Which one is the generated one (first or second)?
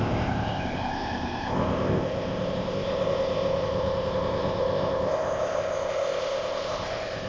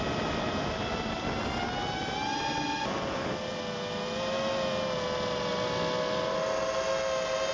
first